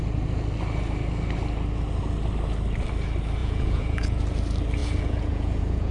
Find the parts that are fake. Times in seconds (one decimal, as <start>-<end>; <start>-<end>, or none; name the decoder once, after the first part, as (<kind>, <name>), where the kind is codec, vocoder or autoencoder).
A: 3.4-4.2 (vocoder, Vocos); 4.8-5.9